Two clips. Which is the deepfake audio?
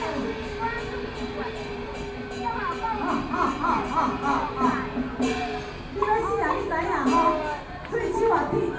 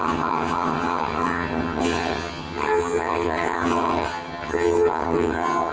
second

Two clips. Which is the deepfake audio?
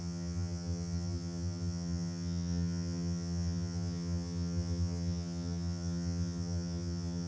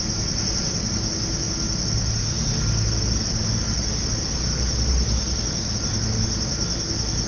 first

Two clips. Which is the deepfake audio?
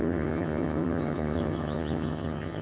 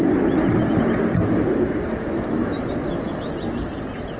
first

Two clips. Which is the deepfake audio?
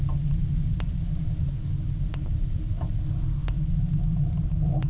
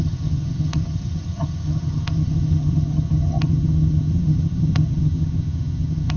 second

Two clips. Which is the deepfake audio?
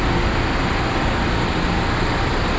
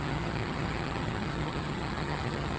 second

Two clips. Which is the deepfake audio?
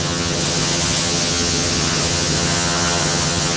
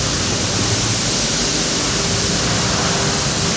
first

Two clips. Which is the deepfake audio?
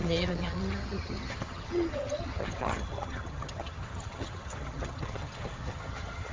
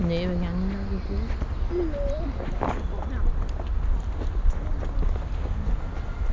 first